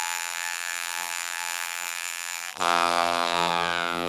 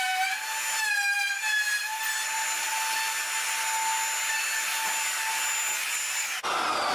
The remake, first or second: first